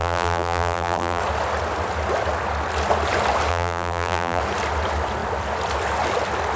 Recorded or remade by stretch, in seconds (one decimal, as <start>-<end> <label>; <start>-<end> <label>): 0.0-1.2 remade; 1.2-3.5 recorded; 3.5-4.4 remade; 4.4-6.6 recorded